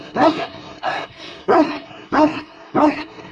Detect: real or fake fake